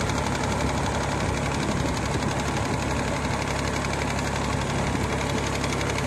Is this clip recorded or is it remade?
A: recorded